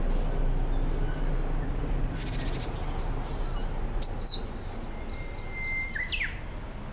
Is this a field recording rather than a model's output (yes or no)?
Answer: yes